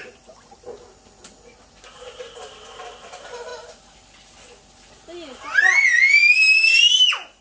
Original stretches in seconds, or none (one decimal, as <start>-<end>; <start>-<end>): 0.0-7.4